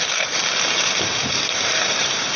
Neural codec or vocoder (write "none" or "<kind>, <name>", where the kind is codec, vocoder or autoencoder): vocoder, BigVGAN v2